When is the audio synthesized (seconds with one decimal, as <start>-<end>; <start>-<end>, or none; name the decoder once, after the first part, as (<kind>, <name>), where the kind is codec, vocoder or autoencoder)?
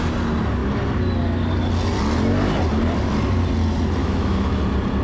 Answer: 4.0-4.6 (autoencoder, DAC-VAE)